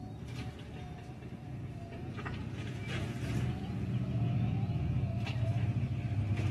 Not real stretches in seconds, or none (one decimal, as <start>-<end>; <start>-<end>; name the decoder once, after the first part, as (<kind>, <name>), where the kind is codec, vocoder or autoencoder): 1.4-5.3 (vocoder, Vocos)